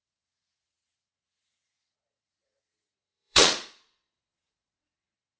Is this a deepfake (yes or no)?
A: yes